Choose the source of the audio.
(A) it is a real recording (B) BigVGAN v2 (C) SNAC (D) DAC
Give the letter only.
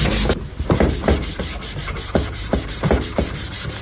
B